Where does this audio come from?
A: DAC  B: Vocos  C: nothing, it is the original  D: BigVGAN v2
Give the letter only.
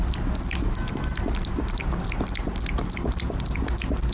C